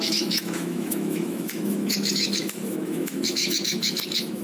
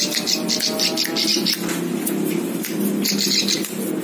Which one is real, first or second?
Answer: second